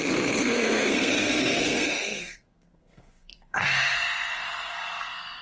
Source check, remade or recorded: remade